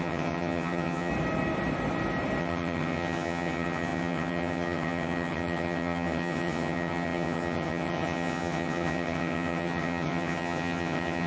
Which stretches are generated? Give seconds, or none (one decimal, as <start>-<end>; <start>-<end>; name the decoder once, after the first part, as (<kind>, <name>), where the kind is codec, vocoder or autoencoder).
0.0-1.1 (vocoder, HiFi-GAN); 2.4-11.3